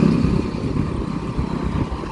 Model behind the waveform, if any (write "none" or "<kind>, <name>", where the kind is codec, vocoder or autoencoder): none